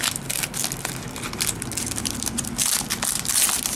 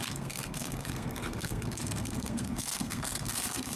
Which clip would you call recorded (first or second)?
first